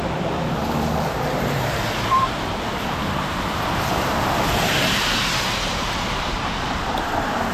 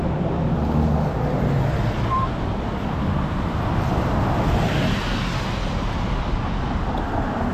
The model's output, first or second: first